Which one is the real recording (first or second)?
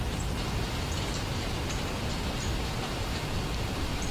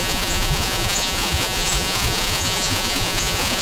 first